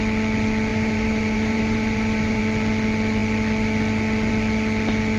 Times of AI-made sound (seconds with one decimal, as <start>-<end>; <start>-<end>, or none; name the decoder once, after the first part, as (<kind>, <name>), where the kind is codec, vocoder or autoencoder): 0.7-2.4 (vocoder, BigVGAN v2)